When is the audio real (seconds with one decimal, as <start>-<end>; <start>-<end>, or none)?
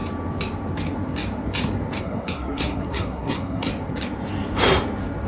0.0-2.0; 3.7-5.3